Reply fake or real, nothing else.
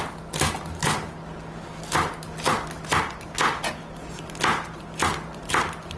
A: real